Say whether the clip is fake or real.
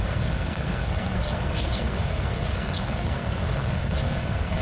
fake